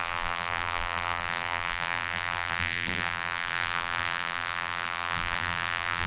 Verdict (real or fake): fake